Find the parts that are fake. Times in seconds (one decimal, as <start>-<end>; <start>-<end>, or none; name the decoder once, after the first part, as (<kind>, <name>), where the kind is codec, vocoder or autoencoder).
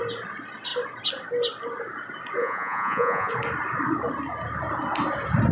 2.4-3.3 (vocoder, Vocos)